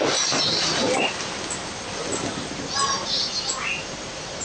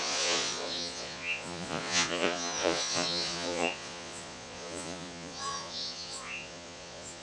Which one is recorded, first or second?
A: first